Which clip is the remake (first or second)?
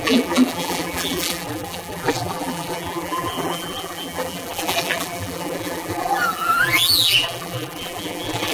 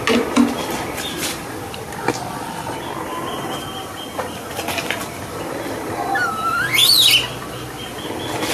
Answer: first